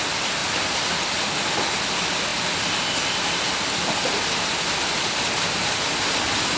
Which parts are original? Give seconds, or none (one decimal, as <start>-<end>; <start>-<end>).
0.0-6.6